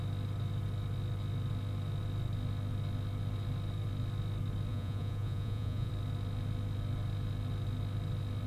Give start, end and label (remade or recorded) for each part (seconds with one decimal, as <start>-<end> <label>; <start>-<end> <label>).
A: 0.0-4.7 recorded; 4.7-5.9 remade; 5.9-8.5 recorded